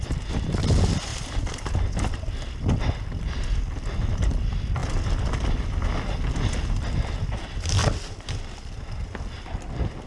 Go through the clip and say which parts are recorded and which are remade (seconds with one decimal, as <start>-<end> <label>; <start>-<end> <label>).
0.0-1.1 recorded; 1.1-2.7 remade; 2.7-4.8 recorded; 4.8-5.8 remade; 5.8-7.8 recorded; 7.8-9.5 remade; 9.5-10.1 recorded